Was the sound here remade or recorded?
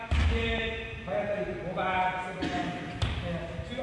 recorded